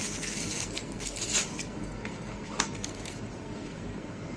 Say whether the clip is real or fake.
fake